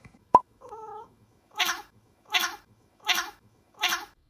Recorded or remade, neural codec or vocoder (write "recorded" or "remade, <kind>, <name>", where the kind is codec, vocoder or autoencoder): remade, autoencoder, DAC-VAE